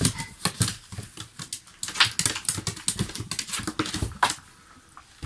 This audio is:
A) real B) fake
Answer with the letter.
A